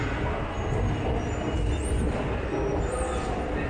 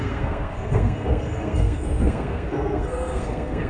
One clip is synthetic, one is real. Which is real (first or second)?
first